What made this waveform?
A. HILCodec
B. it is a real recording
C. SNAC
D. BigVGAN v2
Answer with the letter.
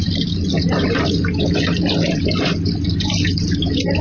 B